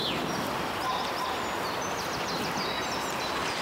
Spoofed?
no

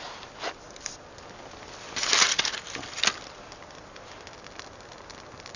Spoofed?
no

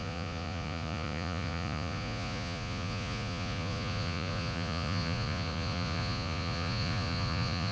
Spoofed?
yes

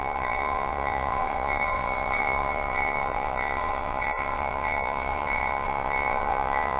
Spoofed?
yes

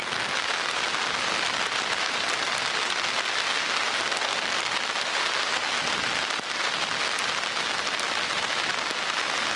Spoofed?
no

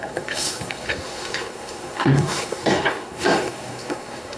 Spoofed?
yes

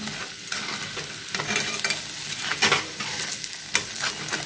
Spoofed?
no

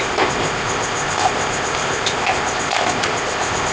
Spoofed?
yes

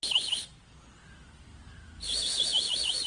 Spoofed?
no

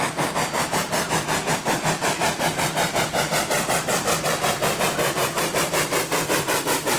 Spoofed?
no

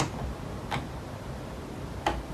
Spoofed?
no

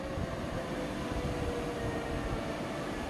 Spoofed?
no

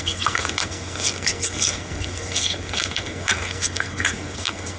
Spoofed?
yes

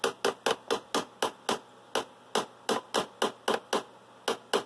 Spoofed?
no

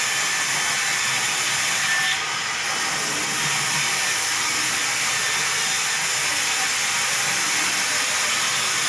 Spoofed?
no